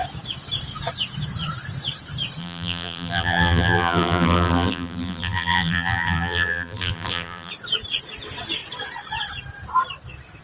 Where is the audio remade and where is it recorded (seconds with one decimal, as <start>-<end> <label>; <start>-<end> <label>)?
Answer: 0.0-2.4 recorded; 2.4-7.5 remade; 7.5-10.4 recorded